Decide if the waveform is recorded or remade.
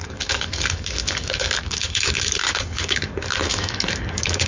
remade